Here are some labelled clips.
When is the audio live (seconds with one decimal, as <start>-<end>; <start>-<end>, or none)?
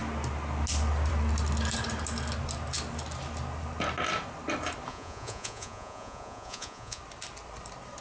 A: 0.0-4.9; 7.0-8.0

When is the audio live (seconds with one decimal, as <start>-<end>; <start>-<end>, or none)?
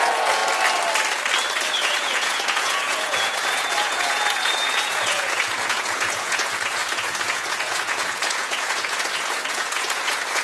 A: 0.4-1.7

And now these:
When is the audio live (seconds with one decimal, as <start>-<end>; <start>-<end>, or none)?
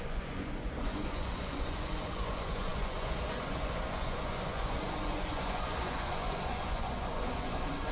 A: none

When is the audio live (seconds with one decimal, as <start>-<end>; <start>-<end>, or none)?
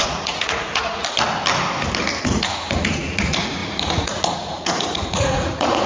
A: 1.0-2.2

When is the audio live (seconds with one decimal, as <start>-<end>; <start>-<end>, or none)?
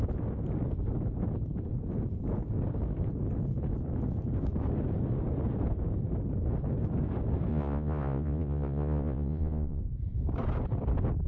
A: 0.0-7.5; 9.8-11.3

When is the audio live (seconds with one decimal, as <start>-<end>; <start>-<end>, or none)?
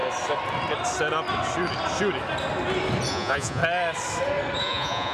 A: 0.0-3.1; 3.6-4.6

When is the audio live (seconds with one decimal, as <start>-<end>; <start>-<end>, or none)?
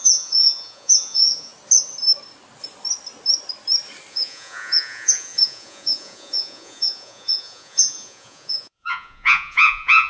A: 1.5-4.1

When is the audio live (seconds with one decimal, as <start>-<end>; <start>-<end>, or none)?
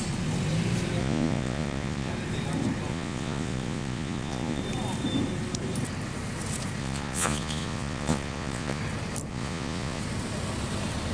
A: 0.0-1.0; 2.1-2.9; 4.6-6.8; 8.8-9.3; 10.0-11.1